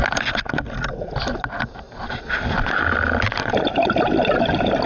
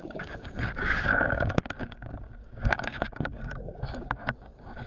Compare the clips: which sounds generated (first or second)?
second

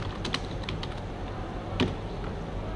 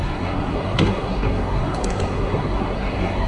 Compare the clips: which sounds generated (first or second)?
second